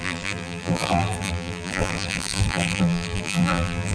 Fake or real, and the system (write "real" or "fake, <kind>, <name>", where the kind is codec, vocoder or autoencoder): fake, vocoder, BigVGAN v2